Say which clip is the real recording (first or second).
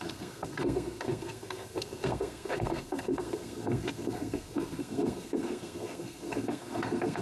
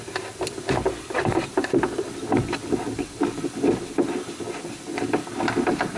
second